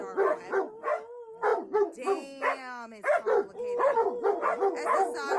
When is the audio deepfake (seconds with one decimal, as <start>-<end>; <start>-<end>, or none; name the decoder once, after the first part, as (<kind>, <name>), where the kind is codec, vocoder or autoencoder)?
none